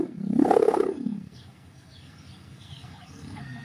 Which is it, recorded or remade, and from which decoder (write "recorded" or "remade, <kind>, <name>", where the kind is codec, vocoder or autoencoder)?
remade, codec, SNAC